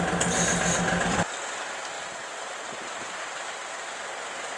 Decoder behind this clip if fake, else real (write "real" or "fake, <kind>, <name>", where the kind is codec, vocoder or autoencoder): real